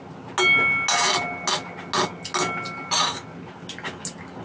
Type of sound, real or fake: real